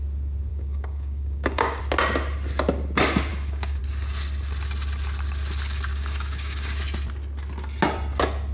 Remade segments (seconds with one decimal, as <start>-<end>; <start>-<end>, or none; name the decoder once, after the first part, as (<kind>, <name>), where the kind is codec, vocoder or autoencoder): 0.5-1.8 (codec, DAC); 3.3-3.8; 5.9-6.8